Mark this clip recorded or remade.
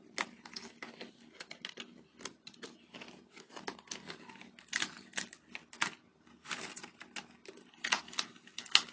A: recorded